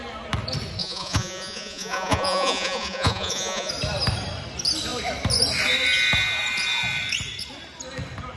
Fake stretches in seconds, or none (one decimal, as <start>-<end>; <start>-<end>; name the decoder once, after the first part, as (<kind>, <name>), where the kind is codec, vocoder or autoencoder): 0.8-3.7 (vocoder, Vocos)